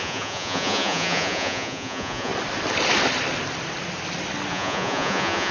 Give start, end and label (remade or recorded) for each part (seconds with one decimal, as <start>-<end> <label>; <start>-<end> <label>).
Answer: 0.0-2.3 remade; 2.3-4.5 recorded; 4.5-5.5 remade